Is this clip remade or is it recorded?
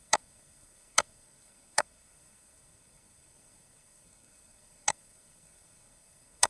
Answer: remade